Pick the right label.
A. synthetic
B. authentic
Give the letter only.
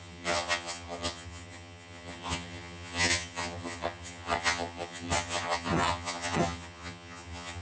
A